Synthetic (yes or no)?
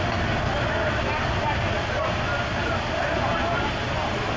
no